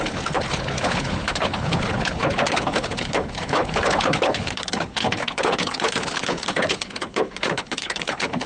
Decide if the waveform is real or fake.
fake